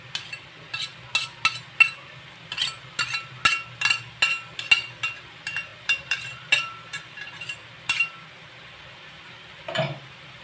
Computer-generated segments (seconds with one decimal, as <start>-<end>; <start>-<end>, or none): 5.7-10.4